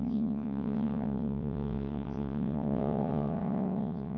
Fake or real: fake